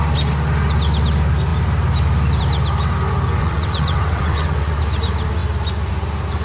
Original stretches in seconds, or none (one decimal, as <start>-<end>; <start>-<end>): 0.0-3.4; 4.8-6.4